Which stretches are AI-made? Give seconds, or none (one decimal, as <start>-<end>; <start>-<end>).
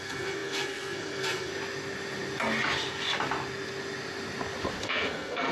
0.0-1.5; 4.8-5.5